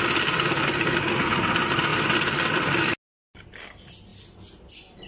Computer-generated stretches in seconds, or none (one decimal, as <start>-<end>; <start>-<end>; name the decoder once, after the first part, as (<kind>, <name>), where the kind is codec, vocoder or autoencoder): 4.1-5.1 (vocoder, BigVGAN v2)